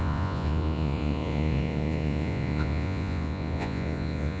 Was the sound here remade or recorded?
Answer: remade